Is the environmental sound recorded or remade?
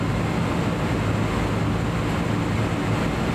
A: recorded